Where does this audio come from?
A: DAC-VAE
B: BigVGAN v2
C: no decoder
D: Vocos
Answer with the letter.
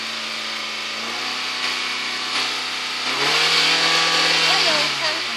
C